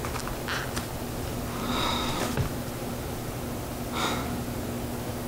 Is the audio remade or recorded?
recorded